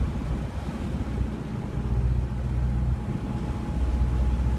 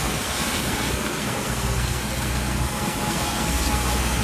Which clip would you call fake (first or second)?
second